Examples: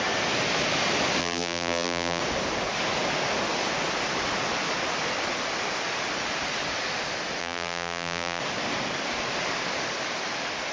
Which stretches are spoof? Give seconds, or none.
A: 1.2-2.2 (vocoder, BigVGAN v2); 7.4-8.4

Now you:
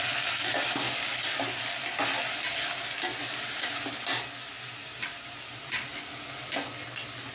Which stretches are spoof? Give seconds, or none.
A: 3.1-5.6 (vocoder, BigVGAN v2)